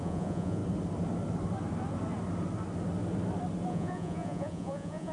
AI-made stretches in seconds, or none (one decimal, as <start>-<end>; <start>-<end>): 0.0-0.6; 3.7-5.1